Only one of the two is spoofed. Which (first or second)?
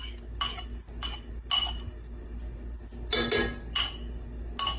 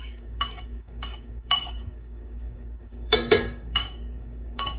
second